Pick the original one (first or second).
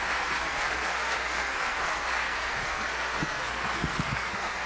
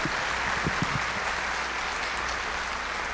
second